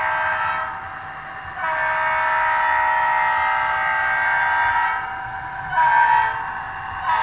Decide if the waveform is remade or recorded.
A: recorded